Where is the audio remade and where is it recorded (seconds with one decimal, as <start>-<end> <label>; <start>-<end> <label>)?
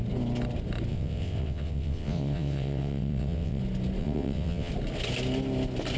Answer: 0.0-0.9 recorded; 0.9-3.6 remade; 3.6-4.0 recorded; 4.0-4.7 remade; 4.7-6.0 recorded